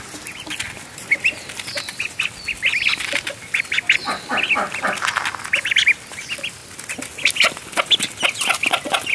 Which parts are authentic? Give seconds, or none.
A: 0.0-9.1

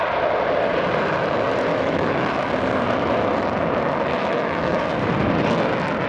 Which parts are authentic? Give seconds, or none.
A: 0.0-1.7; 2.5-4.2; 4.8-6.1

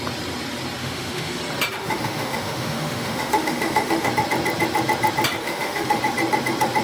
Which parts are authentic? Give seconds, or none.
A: 0.0-0.8; 1.4-1.8; 4.1-5.4; 6.0-6.8

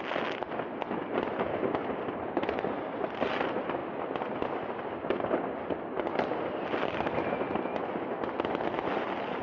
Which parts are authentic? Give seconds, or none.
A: 0.0-9.4

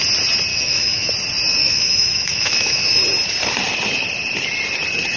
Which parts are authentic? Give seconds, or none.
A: 0.0-0.5; 1.1-1.6; 3.0-5.2

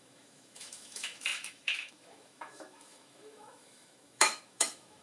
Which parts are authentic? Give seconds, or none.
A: none

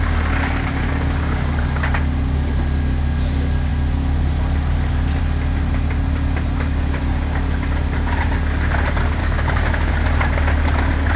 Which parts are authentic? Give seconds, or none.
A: 0.0-9.2; 9.9-11.2